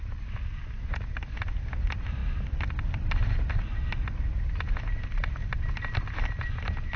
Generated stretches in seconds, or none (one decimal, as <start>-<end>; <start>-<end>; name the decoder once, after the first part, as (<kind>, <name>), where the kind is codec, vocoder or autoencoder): none